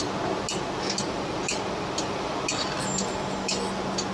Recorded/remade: recorded